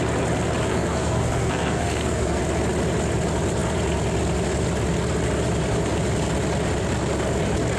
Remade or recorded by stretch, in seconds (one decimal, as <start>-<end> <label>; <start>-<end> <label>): 0.0-0.7 recorded; 0.7-2.4 remade; 2.4-7.8 recorded